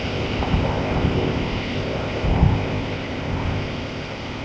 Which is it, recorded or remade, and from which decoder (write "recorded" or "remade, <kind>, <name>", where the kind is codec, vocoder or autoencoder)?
remade, codec, ZipCodec